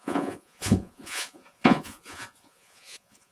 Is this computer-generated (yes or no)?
yes